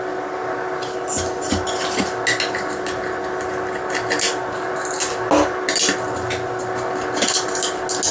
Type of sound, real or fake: real